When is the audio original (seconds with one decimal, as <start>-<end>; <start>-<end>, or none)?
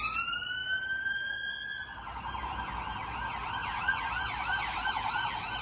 0.0-3.6; 4.1-5.6